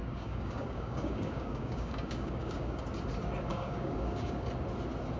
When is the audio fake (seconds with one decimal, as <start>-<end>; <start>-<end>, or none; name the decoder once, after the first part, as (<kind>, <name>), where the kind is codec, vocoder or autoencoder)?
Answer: 0.0-2.8 (codec, DAC); 3.5-4.5